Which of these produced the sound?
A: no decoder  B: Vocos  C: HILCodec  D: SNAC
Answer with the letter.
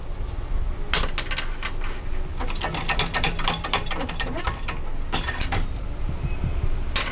A